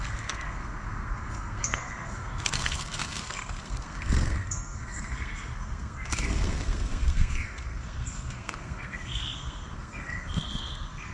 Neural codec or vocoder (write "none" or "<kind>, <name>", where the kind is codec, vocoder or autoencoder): codec, SNAC